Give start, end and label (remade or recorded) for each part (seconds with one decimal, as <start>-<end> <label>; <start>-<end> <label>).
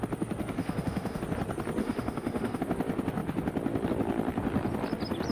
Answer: 0.0-0.6 recorded; 0.6-1.2 remade; 1.2-1.8 recorded; 1.8-2.6 remade; 2.6-5.3 recorded